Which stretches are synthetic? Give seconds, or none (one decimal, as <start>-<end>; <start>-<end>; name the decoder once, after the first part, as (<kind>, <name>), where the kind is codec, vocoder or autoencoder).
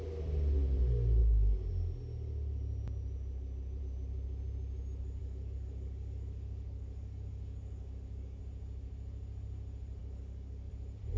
5.2-8.4 (codec, DAC); 10.0-10.7